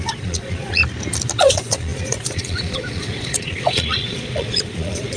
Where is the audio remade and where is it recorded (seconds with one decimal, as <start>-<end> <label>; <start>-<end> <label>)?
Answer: 0.0-0.8 remade; 0.8-1.4 recorded; 1.4-5.2 remade

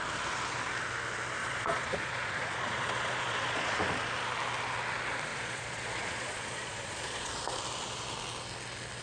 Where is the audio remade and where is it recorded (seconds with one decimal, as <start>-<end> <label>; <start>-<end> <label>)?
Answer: 0.0-1.4 recorded; 1.4-3.8 remade; 3.8-5.3 recorded; 5.3-7.3 remade; 7.3-9.0 recorded

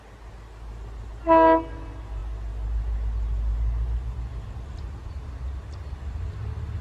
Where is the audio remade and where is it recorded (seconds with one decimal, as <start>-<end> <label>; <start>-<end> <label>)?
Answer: 0.0-6.8 recorded

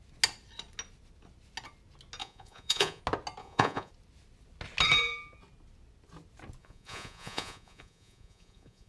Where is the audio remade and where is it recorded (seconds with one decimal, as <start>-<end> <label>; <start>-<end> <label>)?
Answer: 0.0-2.2 recorded; 2.2-3.0 remade; 3.0-3.4 recorded; 3.4-3.9 remade; 3.9-6.6 recorded; 6.6-8.9 remade

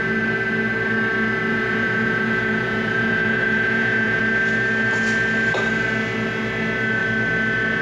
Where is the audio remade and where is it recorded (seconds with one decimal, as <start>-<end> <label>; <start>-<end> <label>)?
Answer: 0.0-1.5 recorded; 1.5-4.2 remade; 4.2-7.8 recorded

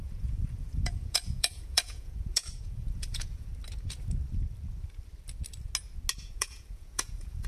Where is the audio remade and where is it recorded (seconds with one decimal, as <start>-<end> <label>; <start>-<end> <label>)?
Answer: 0.0-3.5 remade; 3.5-6.2 recorded; 6.2-7.5 remade

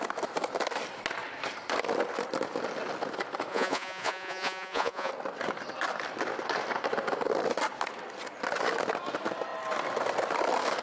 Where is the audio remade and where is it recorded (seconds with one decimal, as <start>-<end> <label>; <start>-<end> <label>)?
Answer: 0.0-3.5 recorded; 3.5-5.1 remade; 5.1-10.8 recorded

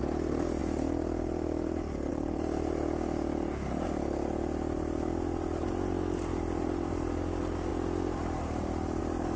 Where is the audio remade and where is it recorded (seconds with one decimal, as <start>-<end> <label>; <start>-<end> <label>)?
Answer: 0.0-9.4 recorded